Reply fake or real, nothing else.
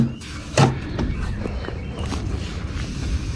real